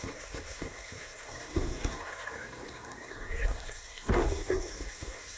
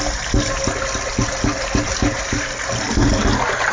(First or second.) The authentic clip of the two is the second